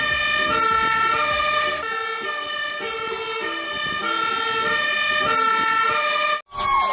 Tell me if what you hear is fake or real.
real